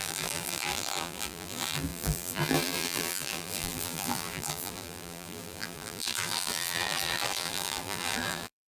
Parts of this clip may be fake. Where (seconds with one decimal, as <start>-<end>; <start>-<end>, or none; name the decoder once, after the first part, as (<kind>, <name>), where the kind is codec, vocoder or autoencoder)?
0.0-8.7 (vocoder, BigVGAN v2)